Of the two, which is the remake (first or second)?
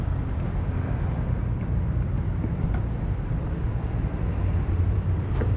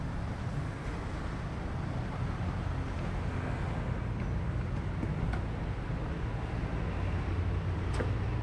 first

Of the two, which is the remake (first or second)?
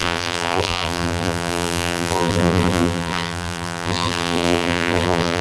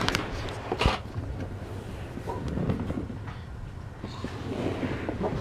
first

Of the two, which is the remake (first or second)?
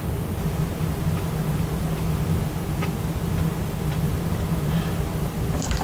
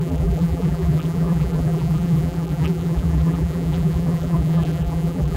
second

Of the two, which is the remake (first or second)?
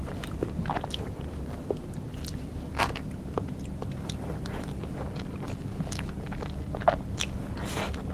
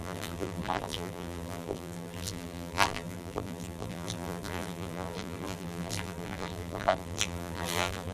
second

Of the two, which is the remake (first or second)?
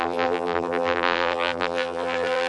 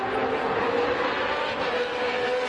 first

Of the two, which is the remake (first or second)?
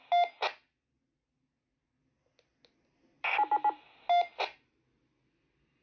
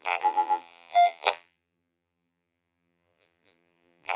second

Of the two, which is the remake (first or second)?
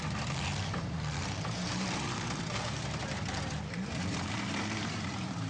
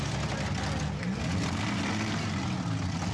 first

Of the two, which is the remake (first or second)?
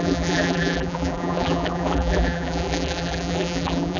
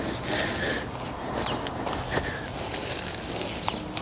first